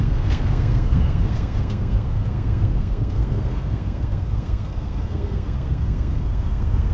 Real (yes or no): no